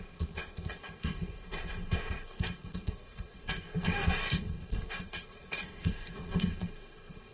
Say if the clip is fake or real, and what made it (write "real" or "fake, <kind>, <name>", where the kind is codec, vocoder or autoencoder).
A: fake, codec, SNAC